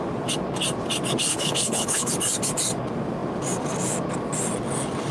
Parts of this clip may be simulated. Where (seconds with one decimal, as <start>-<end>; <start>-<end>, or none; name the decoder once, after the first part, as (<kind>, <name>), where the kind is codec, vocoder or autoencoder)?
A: 1.3-2.1 (codec, HILCodec)